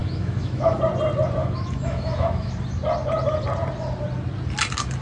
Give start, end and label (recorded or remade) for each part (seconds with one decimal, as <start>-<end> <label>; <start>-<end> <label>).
0.0-0.8 remade; 0.8-1.4 recorded; 1.4-2.5 remade; 2.5-5.0 recorded